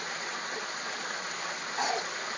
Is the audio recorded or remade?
recorded